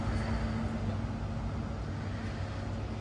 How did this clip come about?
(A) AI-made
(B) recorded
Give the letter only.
B